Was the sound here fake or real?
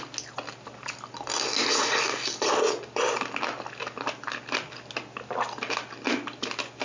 real